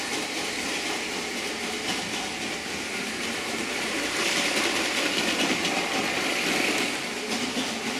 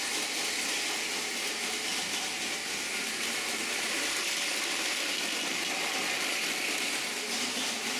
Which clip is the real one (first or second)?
second